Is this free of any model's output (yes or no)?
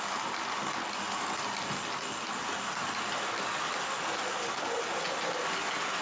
yes